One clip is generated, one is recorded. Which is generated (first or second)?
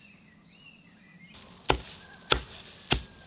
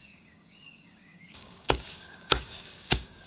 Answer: second